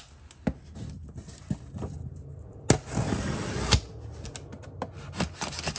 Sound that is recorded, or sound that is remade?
recorded